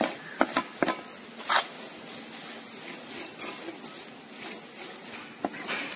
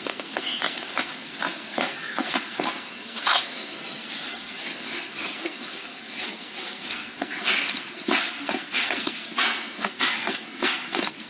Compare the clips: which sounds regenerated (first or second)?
second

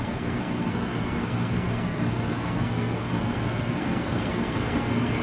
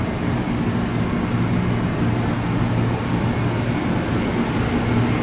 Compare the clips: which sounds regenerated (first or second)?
first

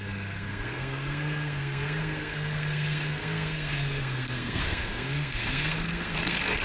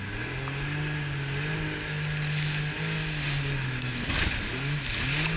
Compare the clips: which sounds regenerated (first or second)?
first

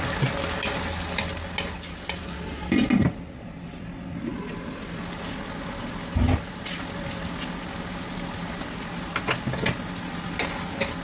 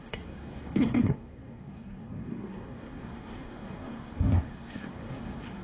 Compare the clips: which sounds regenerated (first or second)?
second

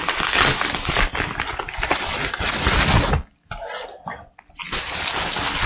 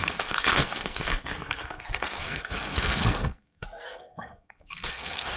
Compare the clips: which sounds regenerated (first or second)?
second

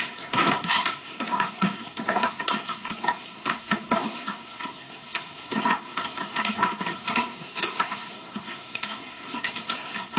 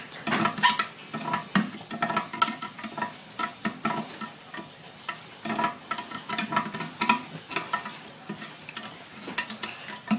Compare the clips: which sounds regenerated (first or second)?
first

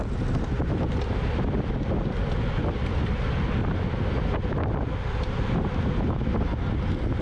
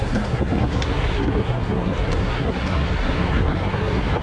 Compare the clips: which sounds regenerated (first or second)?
second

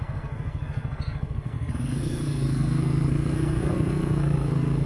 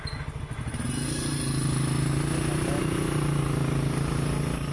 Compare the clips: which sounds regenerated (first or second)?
first